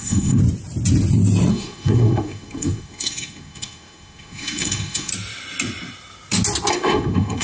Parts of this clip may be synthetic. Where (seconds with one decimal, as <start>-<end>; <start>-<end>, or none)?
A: 0.0-0.4; 1.5-5.1; 6.7-7.4

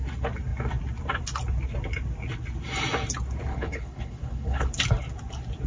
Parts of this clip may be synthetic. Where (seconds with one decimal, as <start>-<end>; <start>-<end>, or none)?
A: 3.5-4.7

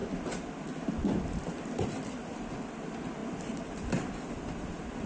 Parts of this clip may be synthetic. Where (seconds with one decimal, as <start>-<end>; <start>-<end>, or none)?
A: none

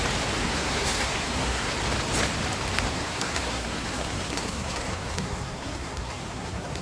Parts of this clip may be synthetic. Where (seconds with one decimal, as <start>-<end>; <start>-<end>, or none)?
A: 0.4-1.7; 2.9-6.8

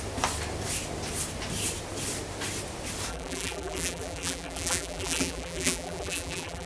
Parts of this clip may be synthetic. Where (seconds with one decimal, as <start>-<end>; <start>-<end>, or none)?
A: 3.1-6.7

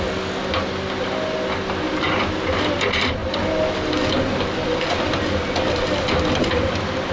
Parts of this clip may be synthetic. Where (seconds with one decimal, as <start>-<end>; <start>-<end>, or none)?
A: none

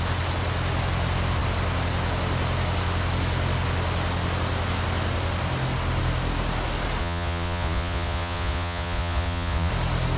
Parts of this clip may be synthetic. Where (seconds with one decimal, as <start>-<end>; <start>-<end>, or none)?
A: 7.0-9.7

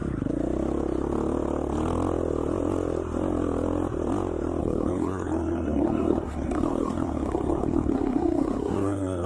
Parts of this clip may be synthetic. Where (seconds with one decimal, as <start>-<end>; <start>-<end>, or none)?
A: 4.6-9.3